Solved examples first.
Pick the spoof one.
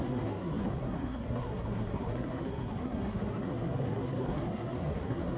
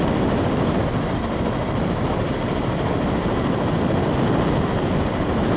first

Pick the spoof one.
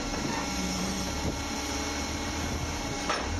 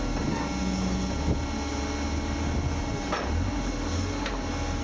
first